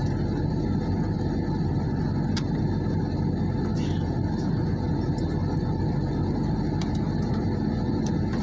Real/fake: real